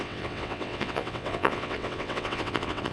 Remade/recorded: remade